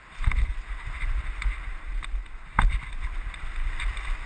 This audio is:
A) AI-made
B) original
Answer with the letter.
A